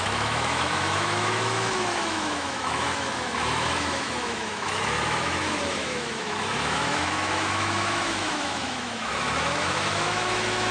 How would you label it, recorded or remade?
remade